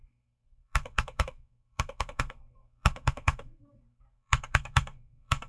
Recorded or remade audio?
remade